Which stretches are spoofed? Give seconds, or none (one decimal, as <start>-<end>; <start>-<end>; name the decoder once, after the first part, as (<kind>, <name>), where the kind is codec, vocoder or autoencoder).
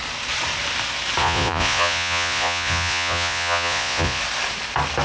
1.2-4.2 (vocoder, Vocos)